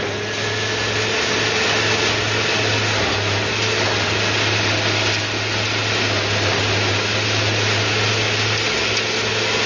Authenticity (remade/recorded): recorded